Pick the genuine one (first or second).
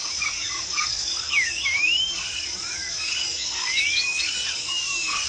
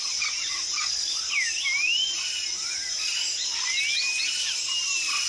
second